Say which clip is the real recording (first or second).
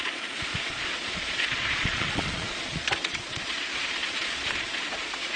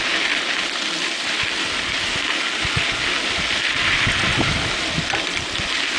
second